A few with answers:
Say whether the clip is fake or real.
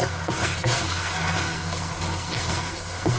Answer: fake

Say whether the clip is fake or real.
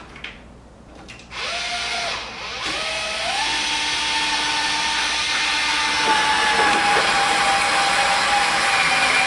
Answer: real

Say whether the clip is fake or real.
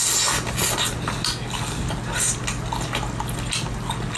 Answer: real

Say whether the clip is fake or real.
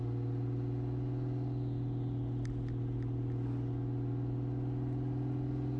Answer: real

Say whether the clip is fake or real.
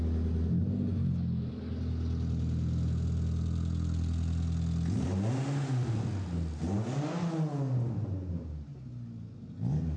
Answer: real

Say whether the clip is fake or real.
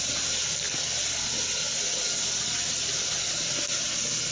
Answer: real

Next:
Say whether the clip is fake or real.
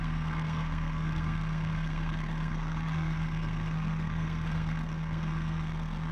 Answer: fake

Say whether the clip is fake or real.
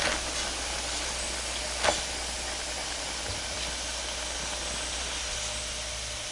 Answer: real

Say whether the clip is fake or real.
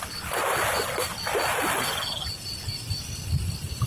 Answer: real